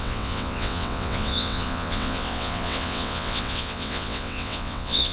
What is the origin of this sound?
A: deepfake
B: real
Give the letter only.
A